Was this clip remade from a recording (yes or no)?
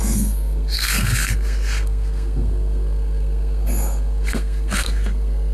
yes